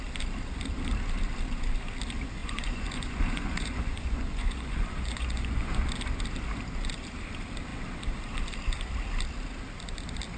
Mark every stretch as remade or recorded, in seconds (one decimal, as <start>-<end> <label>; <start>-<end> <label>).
0.0-2.4 recorded; 2.4-5.9 remade; 5.9-10.4 recorded